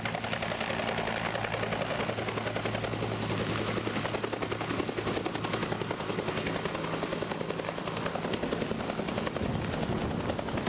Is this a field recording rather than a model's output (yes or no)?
yes